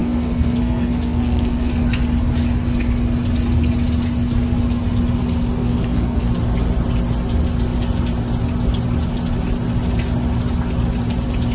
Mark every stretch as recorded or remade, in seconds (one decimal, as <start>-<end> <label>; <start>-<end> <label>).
0.0-1.7 remade; 1.7-5.6 recorded; 5.6-6.3 remade; 6.3-11.5 recorded